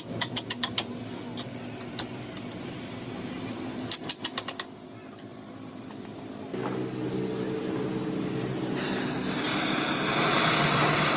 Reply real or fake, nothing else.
real